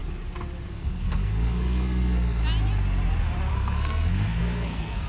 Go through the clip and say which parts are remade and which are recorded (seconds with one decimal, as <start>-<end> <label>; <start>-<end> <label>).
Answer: 0.0-0.7 recorded; 0.7-2.4 remade; 2.4-3.5 recorded; 3.5-5.1 remade